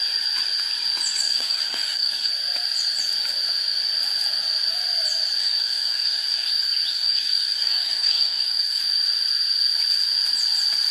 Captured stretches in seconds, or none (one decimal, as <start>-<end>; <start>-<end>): 0.0-1.2; 2.3-5.4; 6.5-6.9; 8.8-10.9